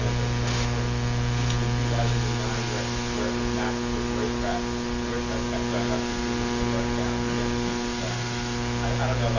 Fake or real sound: real